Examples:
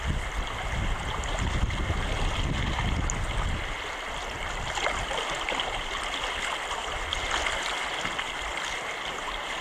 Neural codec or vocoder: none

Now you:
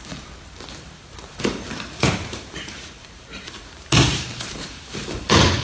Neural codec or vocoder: vocoder, BigVGAN v2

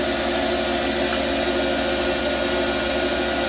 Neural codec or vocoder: none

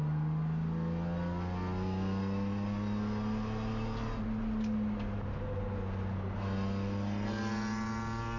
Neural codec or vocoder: none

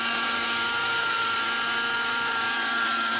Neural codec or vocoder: vocoder, BigVGAN v2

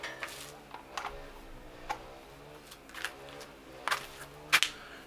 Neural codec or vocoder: none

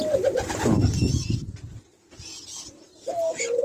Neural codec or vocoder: none